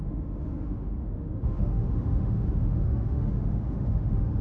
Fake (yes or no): yes